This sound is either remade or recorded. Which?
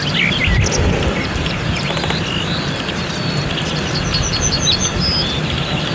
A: recorded